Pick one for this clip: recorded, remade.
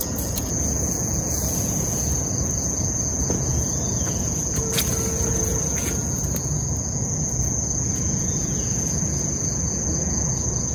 remade